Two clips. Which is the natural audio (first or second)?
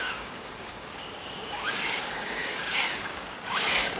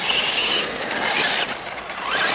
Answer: second